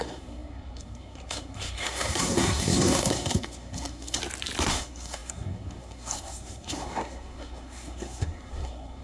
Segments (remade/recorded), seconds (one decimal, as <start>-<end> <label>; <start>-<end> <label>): 0.0-4.2 remade; 4.2-4.7 recorded; 4.7-9.0 remade